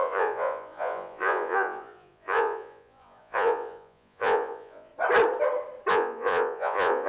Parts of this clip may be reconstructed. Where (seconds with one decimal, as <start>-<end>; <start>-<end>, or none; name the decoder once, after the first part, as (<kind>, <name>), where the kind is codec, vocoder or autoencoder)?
0.0-4.9 (vocoder, Vocos); 5.9-7.1